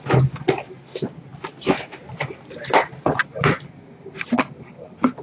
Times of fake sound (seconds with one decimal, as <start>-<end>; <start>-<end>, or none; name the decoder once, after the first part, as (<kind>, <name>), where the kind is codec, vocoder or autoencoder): none